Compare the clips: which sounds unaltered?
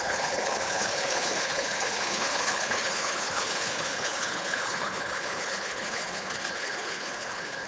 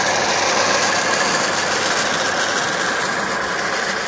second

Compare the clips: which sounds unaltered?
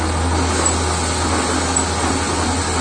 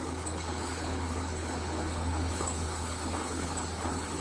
first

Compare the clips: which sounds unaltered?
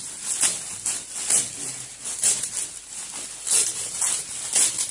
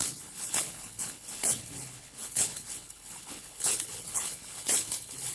first